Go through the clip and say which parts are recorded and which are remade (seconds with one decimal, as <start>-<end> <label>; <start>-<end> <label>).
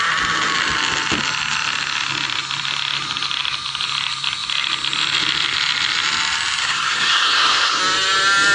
0.0-6.6 recorded; 6.6-7.8 remade; 7.8-8.5 recorded